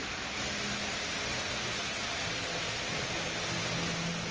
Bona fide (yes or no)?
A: yes